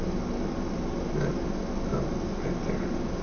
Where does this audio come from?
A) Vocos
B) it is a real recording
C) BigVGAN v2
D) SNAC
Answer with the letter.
B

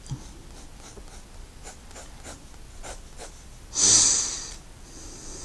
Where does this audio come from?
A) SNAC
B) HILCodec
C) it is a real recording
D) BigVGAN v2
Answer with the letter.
C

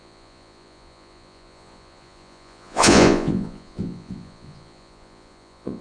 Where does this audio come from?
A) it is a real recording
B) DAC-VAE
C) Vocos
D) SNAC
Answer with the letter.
C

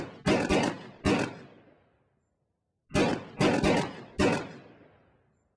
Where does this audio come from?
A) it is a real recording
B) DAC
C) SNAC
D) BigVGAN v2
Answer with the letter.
A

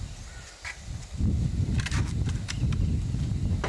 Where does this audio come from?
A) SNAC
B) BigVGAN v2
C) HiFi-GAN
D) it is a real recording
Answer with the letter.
D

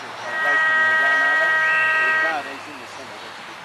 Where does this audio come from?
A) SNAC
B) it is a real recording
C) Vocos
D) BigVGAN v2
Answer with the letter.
B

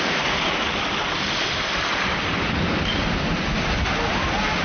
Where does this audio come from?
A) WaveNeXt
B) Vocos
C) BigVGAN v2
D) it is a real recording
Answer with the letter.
D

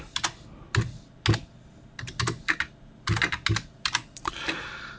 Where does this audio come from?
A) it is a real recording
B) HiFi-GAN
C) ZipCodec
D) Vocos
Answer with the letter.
A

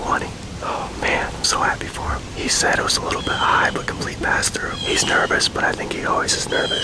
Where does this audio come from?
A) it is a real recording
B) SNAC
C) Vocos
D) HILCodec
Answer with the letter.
A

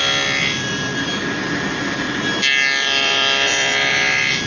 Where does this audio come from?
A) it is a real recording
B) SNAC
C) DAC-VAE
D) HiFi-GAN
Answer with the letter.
A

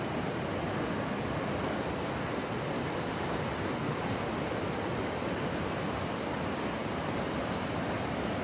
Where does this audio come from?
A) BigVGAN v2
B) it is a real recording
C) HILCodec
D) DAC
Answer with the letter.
B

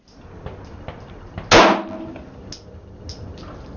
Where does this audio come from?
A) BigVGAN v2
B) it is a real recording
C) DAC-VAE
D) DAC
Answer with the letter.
B